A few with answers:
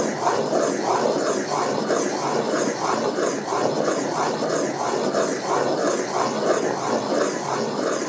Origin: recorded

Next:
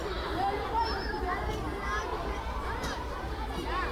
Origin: recorded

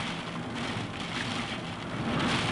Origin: recorded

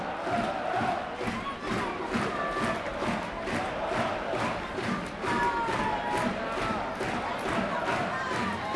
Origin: recorded